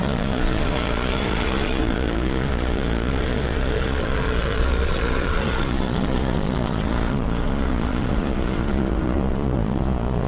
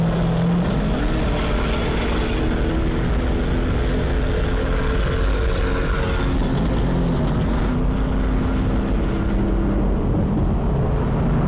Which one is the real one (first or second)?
second